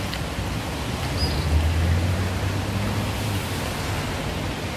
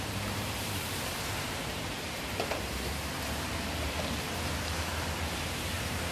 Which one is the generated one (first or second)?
second